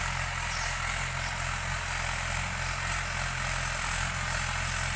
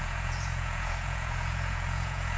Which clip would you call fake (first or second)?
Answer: second